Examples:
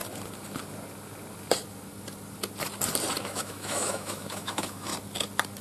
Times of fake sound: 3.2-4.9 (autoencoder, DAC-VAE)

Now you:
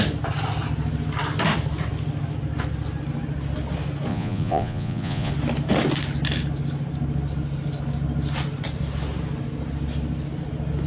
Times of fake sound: 4.1-5.3 (vocoder, Vocos)